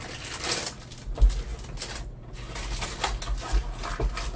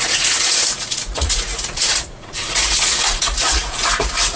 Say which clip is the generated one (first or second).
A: second